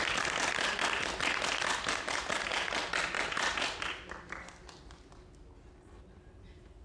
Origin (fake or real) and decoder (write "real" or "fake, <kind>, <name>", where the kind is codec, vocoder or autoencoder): real